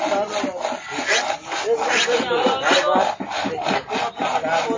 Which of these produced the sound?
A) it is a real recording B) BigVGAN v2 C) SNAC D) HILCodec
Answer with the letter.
A